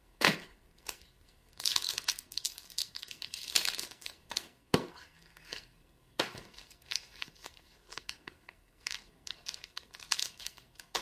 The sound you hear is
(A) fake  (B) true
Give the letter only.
A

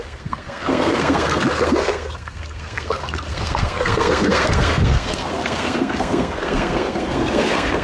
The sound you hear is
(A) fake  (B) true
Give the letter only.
A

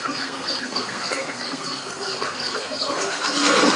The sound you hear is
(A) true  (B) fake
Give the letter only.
B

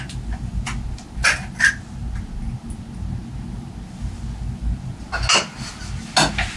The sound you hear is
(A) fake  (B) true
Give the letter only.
B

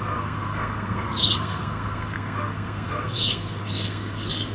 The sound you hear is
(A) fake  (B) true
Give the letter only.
A